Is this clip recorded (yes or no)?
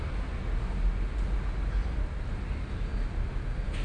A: yes